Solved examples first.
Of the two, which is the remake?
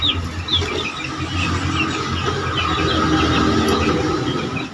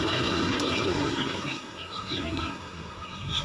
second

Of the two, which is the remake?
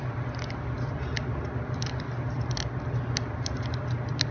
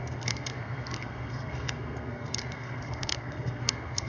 second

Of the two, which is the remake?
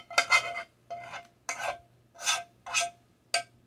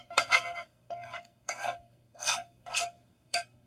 second